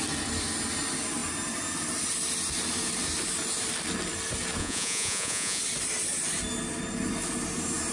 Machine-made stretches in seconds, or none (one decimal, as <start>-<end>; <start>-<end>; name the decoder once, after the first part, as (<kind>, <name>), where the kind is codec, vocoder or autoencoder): 4.6-5.6 (vocoder, Vocos)